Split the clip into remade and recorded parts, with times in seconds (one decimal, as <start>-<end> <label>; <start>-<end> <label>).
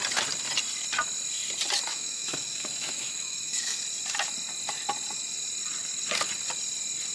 0.0-1.9 recorded; 1.9-3.8 remade; 3.8-7.1 recorded